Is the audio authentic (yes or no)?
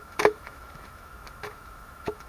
no